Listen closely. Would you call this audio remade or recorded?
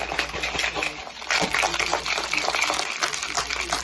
recorded